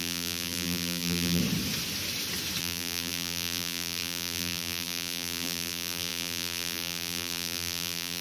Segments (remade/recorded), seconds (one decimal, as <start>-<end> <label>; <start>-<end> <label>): 0.0-1.4 remade; 1.4-2.6 recorded; 2.6-8.2 remade